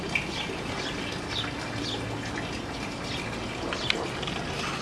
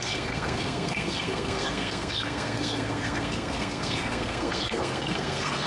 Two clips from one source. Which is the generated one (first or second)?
second